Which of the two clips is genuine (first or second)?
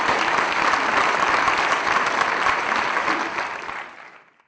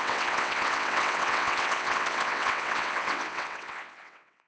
first